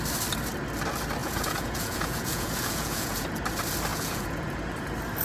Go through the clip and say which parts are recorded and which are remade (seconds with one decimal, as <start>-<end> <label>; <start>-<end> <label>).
0.0-1.2 recorded; 1.2-3.3 remade; 3.3-3.9 recorded; 3.9-4.6 remade; 4.6-5.2 recorded